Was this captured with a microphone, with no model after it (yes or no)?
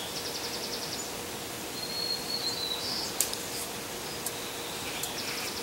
yes